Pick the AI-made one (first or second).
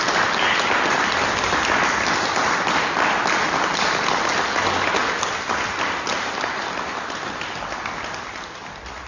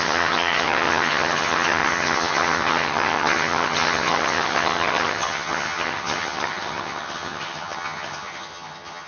second